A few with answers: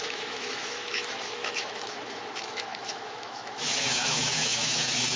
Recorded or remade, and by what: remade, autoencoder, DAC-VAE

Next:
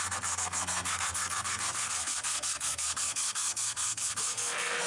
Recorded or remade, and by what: remade, codec, SNAC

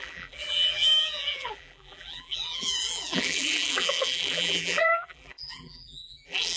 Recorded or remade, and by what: remade, vocoder, BigVGAN v2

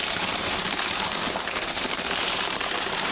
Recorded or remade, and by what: remade, vocoder, BigVGAN v2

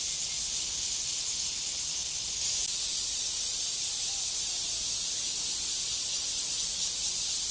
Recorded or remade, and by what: recorded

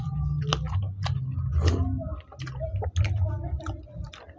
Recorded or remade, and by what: recorded